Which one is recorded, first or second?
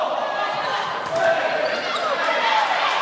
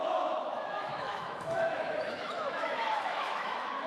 first